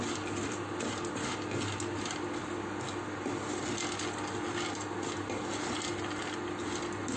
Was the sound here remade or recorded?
recorded